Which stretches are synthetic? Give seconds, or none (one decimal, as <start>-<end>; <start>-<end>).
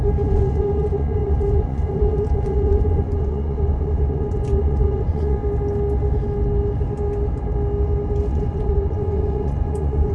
0.0-5.4; 8.3-10.1